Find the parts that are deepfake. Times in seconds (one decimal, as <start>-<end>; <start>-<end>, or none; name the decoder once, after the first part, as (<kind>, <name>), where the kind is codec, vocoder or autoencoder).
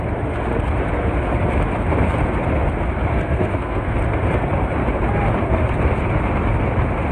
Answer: 3.1-4.0 (codec, SNAC)